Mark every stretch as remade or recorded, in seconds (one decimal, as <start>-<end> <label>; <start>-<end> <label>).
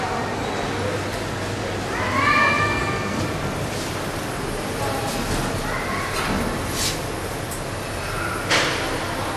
0.0-2.4 recorded; 2.4-3.2 remade; 3.2-9.4 recorded